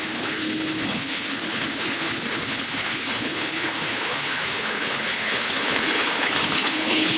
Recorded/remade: remade